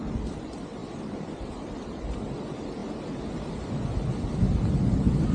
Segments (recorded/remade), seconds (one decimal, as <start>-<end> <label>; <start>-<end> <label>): 0.0-5.3 recorded